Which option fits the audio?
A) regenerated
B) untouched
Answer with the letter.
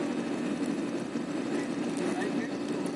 B